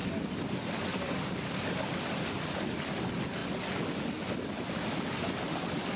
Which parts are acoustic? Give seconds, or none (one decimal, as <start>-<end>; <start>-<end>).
0.0-6.0